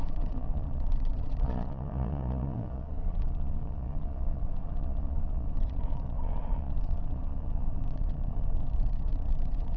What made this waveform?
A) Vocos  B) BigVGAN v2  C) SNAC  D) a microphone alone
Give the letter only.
A